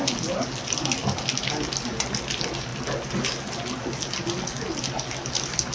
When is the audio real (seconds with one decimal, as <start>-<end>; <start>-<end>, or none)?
0.0-5.7